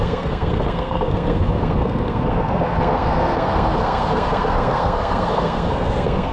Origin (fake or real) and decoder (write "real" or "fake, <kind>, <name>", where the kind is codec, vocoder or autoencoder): fake, codec, SNAC